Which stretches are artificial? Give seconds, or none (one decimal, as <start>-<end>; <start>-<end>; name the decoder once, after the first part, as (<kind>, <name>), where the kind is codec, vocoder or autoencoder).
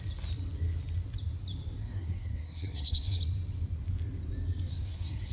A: 1.8-3.2 (codec, SNAC); 4.7-5.3